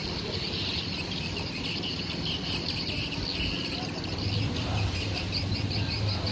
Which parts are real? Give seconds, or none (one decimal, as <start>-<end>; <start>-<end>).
0.0-0.8; 3.3-6.3